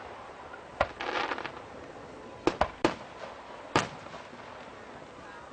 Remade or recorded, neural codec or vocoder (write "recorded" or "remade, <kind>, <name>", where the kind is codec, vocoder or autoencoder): recorded